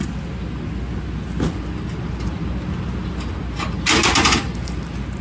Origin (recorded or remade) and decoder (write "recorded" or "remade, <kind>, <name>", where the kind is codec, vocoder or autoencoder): recorded